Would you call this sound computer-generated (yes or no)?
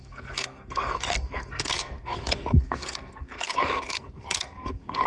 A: yes